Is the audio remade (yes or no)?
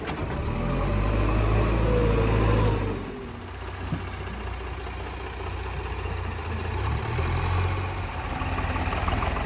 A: no